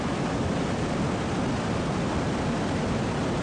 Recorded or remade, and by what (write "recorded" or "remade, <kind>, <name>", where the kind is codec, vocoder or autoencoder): recorded